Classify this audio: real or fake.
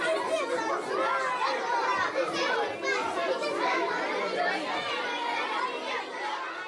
real